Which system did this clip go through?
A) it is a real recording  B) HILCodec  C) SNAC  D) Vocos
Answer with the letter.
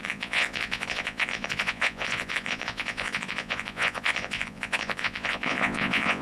D